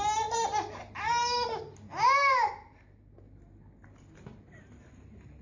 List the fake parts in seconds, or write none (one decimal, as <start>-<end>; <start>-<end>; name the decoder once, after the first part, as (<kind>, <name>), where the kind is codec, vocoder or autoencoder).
none